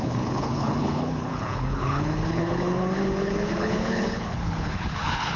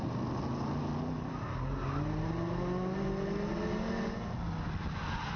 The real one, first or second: second